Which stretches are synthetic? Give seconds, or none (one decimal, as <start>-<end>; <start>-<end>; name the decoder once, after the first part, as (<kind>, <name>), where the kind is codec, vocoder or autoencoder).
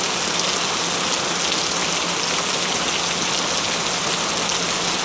none